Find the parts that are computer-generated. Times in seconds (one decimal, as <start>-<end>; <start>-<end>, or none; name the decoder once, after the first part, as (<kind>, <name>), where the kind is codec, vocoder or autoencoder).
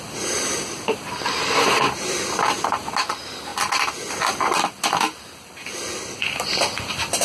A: none